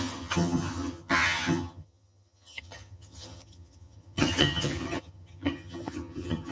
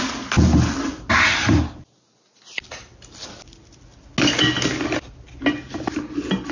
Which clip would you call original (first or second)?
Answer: second